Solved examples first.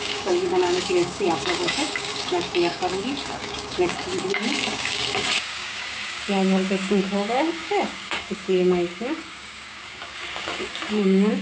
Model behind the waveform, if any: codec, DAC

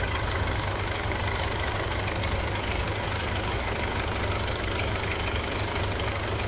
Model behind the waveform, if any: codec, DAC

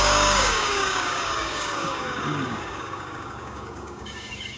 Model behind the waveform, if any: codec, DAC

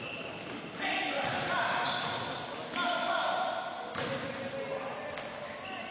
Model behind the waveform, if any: none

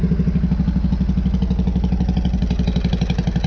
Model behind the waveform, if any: none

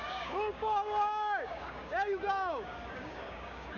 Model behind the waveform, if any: codec, DAC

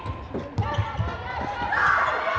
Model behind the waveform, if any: none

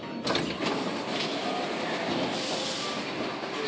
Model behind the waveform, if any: none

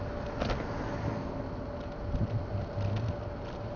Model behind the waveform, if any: none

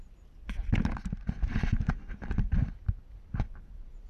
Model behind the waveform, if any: none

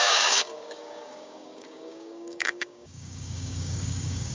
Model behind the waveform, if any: codec, DAC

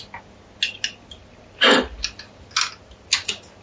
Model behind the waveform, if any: none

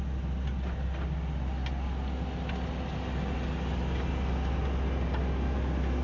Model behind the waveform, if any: none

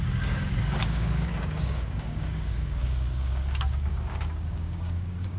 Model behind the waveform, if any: codec, DAC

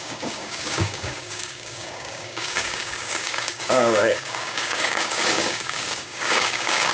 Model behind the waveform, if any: codec, DAC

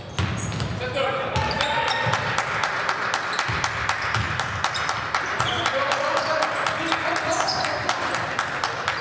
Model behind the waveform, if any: none